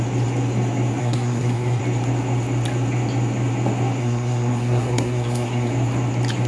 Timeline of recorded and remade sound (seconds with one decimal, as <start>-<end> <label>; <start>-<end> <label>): 0.0-1.0 recorded; 1.0-1.8 remade; 1.8-4.0 recorded; 4.0-5.7 remade; 5.7-6.5 recorded